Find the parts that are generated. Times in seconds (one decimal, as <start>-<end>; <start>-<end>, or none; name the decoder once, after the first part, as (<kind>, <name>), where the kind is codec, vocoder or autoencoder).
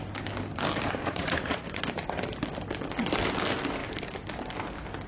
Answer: 1.0-1.8 (vocoder, Vocos)